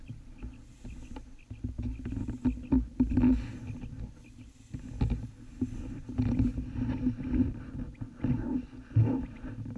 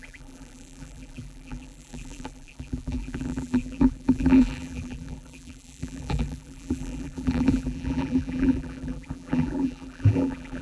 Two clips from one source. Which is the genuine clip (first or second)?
first